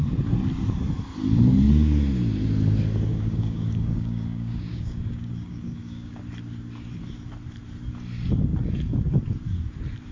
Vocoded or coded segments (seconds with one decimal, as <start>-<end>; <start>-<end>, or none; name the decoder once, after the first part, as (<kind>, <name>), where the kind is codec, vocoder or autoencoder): 3.1-6.2 (codec, DAC)